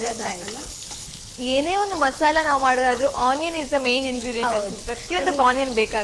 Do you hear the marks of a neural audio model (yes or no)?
yes